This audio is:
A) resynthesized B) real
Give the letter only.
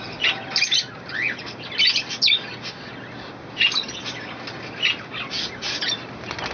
B